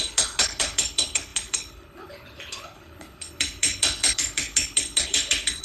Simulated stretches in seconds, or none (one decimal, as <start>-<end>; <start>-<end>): 0.0-5.6